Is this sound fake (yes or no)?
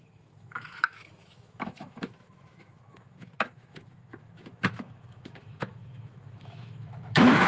yes